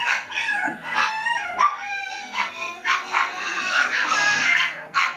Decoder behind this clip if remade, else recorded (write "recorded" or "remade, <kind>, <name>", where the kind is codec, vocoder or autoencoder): remade, codec, SNAC